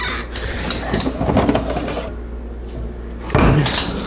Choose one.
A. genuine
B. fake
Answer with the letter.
A